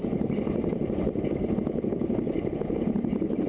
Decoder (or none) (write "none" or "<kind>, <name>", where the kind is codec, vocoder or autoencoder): none